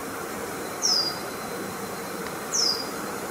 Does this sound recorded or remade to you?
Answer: remade